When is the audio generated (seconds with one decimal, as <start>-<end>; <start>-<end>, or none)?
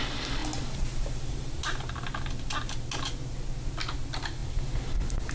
none